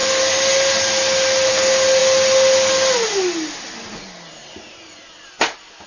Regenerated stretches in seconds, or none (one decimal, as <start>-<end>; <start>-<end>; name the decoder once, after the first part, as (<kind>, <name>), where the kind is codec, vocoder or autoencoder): none

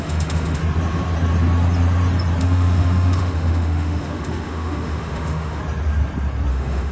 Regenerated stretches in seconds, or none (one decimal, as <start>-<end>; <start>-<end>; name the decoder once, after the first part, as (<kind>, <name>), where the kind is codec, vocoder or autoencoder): 0.0-0.6 (autoencoder, DAC-VAE); 2.4-5.6; 6.5-6.9

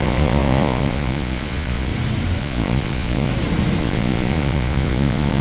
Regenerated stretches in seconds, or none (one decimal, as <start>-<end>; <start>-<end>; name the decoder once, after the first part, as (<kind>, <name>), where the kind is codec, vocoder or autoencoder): 0.0-1.9 (vocoder, Vocos); 2.4-3.3; 3.8-5.4

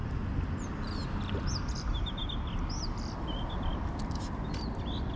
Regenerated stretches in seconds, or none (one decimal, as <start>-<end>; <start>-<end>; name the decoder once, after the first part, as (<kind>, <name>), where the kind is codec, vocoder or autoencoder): none

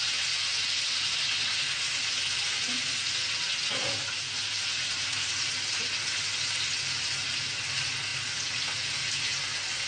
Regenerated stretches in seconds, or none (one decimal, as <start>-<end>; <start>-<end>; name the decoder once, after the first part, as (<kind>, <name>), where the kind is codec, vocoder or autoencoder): none